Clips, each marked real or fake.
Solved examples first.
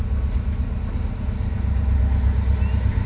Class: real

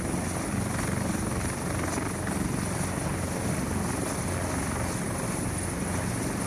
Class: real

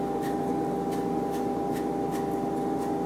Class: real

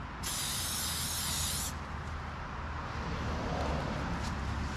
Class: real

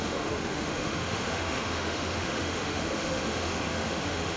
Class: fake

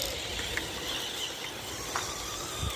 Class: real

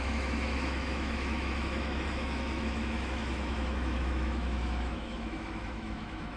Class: fake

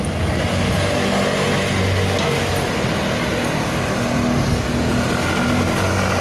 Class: real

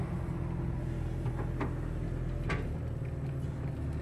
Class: real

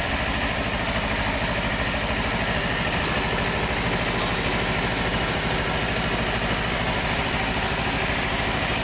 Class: real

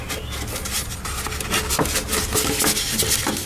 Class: real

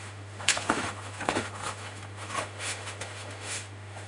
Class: fake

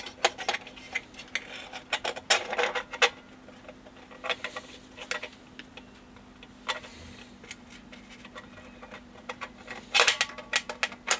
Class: real